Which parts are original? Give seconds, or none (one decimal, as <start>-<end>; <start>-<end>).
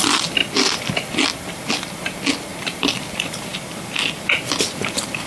3.5-5.3